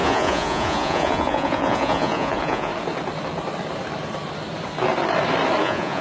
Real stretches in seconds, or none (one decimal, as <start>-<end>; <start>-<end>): 2.7-5.6